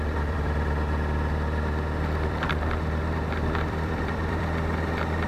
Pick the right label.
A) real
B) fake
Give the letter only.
B